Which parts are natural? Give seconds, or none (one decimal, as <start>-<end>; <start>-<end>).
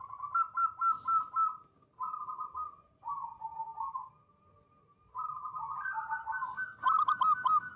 0.0-7.8